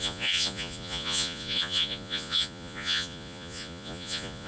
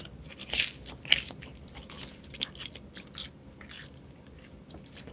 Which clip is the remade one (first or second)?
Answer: first